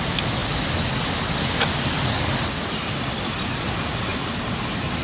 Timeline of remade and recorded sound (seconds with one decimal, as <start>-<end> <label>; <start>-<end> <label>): 0.0-4.1 recorded; 4.1-5.0 remade